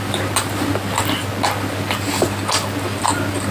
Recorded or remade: recorded